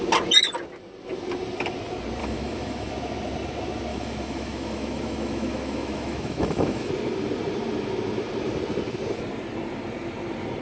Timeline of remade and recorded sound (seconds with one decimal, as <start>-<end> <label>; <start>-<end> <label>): 0.0-2.2 recorded; 2.2-2.9 remade; 2.9-3.9 recorded; 3.9-6.9 remade; 6.9-10.6 recorded